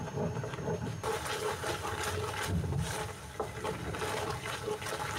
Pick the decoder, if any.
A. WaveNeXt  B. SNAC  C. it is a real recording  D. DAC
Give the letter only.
C